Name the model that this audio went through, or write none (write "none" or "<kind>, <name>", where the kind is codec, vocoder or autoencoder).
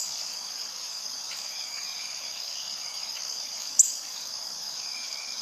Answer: codec, DAC